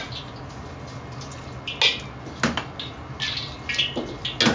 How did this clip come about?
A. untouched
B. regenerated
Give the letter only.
A